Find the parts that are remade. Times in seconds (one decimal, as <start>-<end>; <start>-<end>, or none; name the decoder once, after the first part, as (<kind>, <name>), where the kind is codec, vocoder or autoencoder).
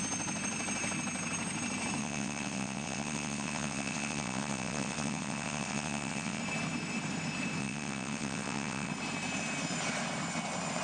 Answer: 2.0-6.4 (vocoder, WaveNeXt); 7.6-8.9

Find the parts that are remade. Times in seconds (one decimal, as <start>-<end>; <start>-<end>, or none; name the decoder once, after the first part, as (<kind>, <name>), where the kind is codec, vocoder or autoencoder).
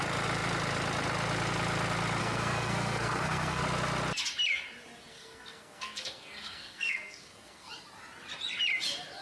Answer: 2.2-3.6 (codec, SNAC); 5.1-7.7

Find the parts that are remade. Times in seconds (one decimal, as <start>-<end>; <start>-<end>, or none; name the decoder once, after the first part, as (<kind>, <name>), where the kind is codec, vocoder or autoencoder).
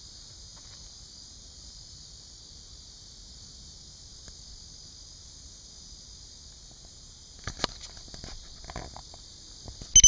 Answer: 0.5-2.4 (vocoder, BigVGAN v2)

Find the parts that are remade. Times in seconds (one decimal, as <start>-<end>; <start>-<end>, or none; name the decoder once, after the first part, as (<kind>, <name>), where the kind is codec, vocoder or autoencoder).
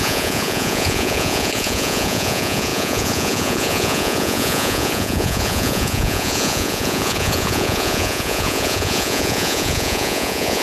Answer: 0.0-10.6 (vocoder, Vocos)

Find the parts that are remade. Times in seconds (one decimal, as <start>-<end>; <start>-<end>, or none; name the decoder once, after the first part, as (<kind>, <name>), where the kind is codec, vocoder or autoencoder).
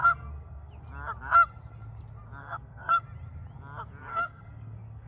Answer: 0.0-0.7 (codec, SNAC); 2.4-3.0; 4.1-5.1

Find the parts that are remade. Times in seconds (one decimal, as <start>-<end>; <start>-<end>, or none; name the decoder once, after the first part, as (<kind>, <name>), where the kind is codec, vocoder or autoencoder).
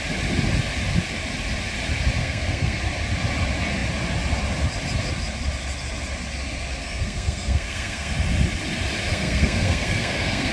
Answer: 2.2-2.8 (codec, SNAC); 6.8-8.1; 9.1-10.5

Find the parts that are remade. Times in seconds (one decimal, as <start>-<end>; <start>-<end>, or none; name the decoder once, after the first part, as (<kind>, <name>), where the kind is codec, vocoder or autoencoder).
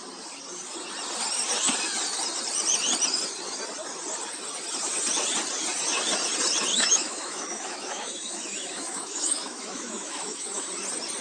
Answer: 6.7-10.7 (autoencoder, DAC-VAE)